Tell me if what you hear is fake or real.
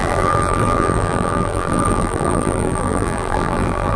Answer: fake